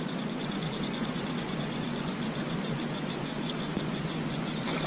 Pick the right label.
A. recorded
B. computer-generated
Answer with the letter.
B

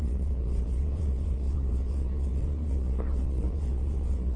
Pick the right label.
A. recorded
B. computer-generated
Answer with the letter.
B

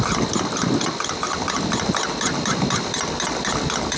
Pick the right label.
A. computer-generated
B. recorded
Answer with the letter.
B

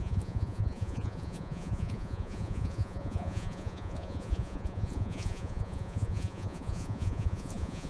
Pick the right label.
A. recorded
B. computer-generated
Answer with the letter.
B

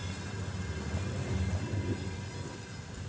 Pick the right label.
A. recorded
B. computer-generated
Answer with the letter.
A